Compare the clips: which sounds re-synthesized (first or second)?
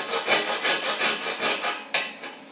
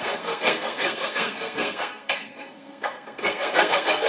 second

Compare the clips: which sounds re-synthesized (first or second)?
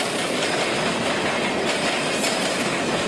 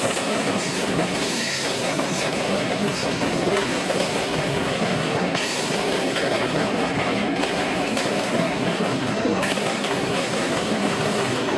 second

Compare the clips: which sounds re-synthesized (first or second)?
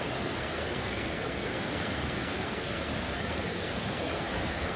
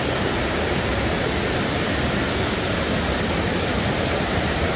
first